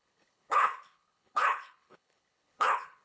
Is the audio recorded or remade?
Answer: remade